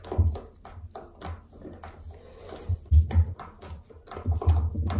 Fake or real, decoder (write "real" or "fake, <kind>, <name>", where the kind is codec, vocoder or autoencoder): real